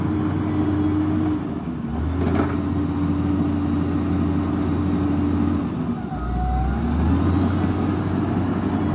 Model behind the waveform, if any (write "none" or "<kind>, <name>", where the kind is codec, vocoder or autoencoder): none